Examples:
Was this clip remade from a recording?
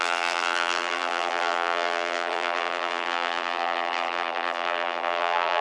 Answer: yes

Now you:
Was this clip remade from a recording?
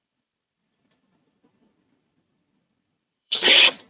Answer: yes